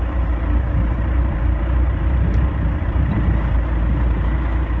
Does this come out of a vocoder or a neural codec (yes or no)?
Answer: yes